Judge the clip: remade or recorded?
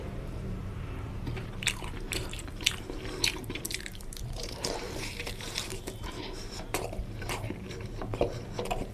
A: remade